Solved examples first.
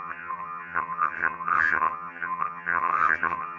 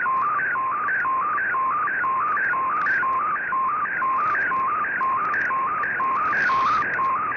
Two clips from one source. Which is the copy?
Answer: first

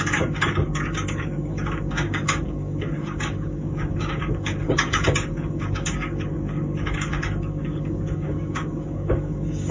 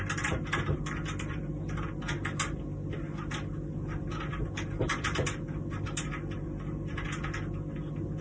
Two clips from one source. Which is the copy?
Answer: first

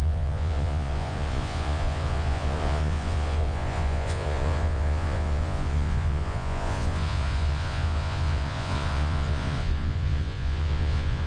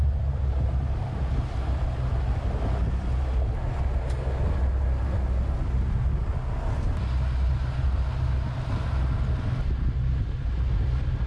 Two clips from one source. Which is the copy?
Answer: first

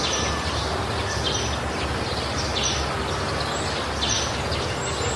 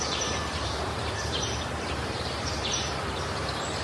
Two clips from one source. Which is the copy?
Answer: second